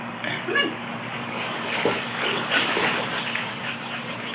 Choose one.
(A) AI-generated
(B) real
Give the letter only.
A